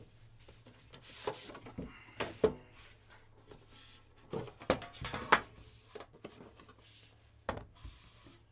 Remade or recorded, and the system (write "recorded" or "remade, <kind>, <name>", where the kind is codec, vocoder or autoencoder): recorded